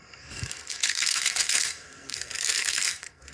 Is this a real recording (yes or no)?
no